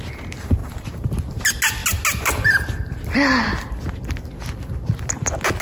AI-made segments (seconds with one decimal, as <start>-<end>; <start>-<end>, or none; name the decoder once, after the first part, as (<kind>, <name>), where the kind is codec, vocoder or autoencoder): 0.6-1.1 (vocoder, BigVGAN v2)